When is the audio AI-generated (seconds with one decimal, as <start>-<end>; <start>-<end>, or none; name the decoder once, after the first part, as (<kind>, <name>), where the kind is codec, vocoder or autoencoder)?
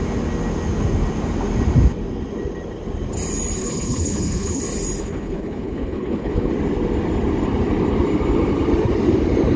3.6-4.6 (codec, HILCodec); 5.0-6.5